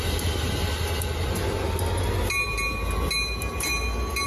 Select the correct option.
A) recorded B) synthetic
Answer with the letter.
A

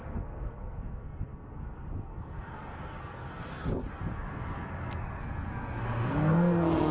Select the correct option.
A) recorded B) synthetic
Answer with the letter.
B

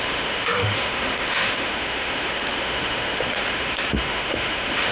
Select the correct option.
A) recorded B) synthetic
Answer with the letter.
B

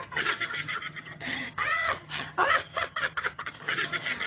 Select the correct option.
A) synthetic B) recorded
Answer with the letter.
A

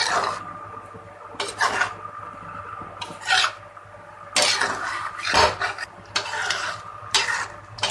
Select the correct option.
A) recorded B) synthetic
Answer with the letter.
A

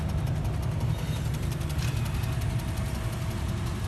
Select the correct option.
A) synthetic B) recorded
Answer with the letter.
B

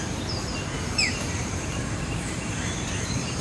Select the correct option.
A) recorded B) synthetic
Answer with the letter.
B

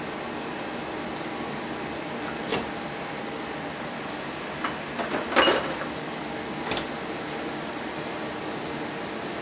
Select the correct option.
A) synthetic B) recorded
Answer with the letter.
B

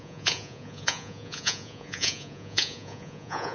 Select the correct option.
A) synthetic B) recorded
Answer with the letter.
A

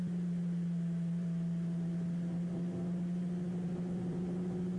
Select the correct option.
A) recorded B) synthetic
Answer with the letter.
A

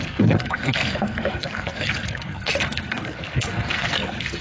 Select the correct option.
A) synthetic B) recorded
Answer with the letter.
A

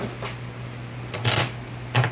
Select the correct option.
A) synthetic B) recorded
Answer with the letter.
B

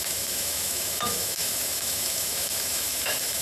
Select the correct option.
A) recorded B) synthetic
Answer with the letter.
B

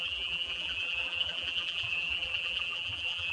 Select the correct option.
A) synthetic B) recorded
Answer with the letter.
A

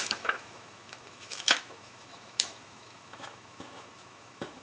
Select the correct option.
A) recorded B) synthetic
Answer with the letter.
B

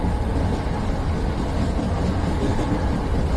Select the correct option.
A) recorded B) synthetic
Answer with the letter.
A